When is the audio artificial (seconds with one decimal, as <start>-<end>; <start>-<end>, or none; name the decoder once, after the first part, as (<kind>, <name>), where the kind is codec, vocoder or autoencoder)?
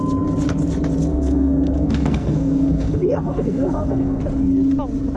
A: 1.1-4.2 (codec, SNAC)